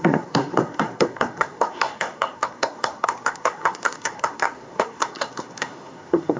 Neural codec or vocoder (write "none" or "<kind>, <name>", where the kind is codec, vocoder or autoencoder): codec, SNAC